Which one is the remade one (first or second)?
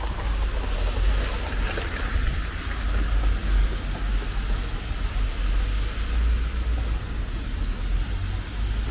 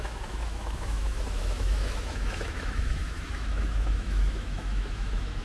second